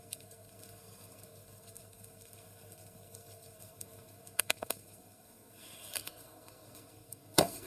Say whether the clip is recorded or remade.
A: remade